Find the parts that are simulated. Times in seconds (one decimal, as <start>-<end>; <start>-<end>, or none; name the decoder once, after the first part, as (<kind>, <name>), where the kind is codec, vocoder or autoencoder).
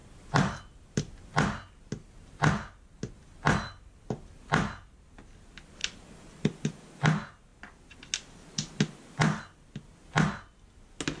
0.0-1.3 (vocoder, BigVGAN v2); 5.8-6.8